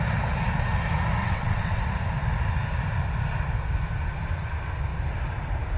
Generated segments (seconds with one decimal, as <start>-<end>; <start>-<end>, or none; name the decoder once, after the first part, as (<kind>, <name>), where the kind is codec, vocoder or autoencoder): 1.2-1.8 (vocoder, WaveNeXt)